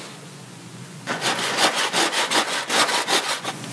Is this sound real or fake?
fake